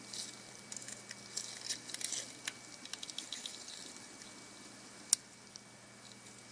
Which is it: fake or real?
real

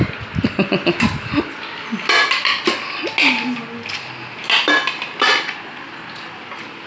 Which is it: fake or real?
real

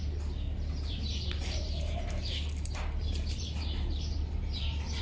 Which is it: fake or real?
fake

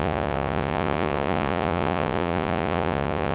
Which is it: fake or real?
fake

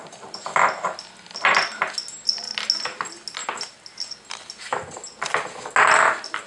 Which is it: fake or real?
real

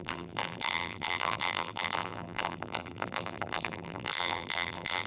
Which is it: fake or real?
fake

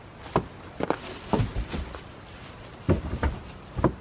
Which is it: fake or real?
real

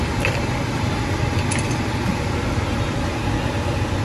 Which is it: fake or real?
real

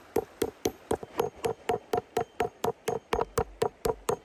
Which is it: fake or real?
real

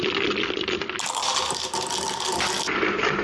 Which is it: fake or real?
real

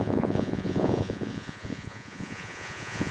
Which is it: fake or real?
fake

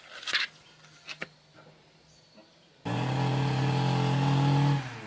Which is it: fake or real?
real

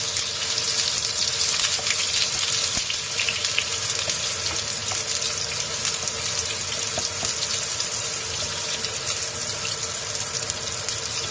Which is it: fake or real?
real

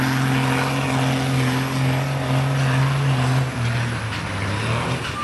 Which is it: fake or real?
real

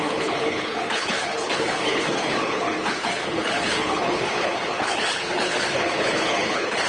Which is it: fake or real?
fake